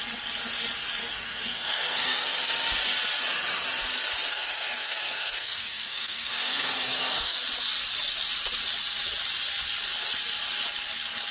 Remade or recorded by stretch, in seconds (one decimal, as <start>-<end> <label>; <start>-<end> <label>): 0.0-1.0 recorded; 1.0-2.5 remade; 2.5-4.3 recorded; 4.3-7.4 remade; 7.4-11.3 recorded